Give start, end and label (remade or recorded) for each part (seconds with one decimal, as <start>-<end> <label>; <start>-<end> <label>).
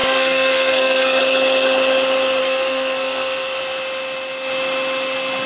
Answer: 0.0-1.2 remade; 1.2-2.4 recorded; 2.4-3.6 remade; 3.6-5.5 recorded